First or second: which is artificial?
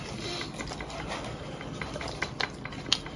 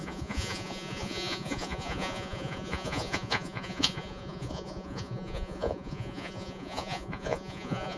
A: second